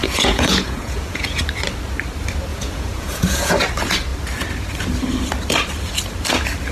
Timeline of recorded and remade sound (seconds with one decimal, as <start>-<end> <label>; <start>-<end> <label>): 0.0-1.4 remade; 1.4-2.5 recorded; 2.5-3.5 remade; 3.5-6.7 recorded